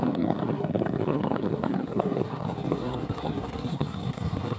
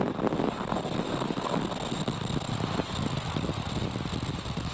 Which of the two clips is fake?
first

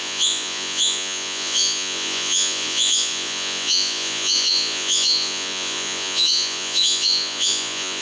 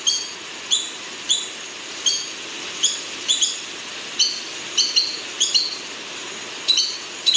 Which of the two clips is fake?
first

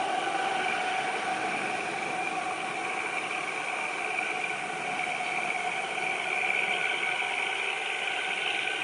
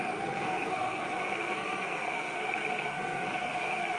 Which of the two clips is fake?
second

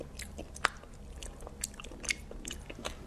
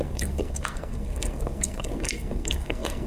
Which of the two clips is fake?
second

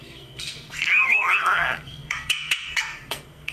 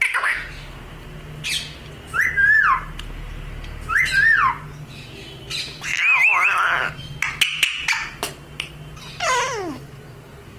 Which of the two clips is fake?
first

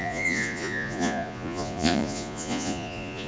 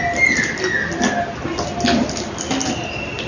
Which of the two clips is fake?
first